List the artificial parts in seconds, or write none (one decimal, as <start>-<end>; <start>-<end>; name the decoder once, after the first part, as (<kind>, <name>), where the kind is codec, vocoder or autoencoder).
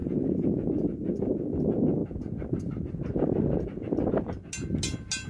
0.0-0.7 (vocoder, Vocos)